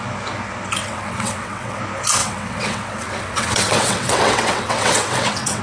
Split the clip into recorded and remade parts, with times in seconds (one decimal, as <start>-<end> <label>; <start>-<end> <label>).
0.0-0.8 recorded; 0.8-1.8 remade; 1.8-2.2 recorded; 2.2-5.6 remade